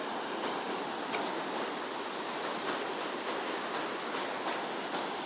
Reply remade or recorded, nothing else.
recorded